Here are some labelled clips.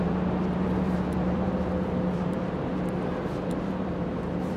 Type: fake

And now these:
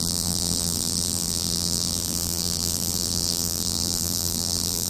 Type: fake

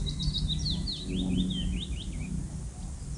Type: real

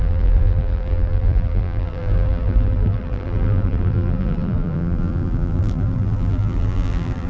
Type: fake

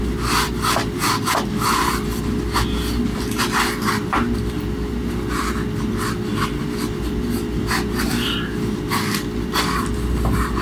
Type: real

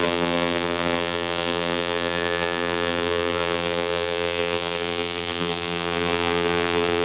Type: fake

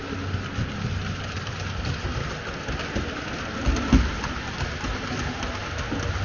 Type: real